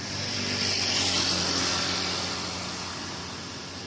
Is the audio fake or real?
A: real